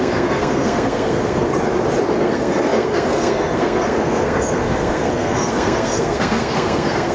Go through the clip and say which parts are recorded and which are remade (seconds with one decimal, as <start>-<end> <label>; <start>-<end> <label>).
0.0-1.5 remade; 1.5-2.2 recorded; 2.2-7.1 remade